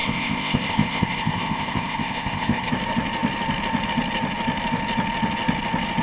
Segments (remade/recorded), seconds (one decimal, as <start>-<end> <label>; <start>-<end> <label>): 0.0-2.7 remade; 2.7-6.0 recorded